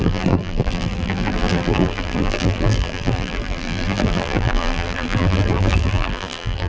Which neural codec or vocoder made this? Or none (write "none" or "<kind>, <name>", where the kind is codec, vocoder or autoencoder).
vocoder, BigVGAN v2